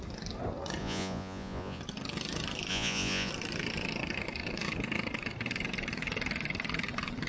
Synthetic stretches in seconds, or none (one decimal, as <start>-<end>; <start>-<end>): 0.8-1.8; 2.7-3.3